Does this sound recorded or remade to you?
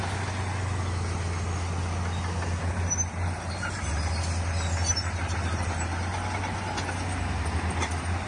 recorded